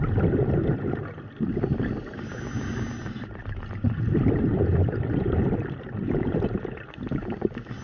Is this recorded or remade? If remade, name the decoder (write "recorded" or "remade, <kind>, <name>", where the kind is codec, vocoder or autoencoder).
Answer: recorded